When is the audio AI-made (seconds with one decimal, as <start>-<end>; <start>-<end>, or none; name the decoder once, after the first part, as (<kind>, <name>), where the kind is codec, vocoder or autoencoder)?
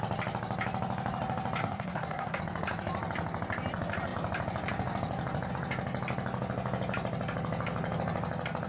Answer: 1.6-2.4 (codec, SNAC)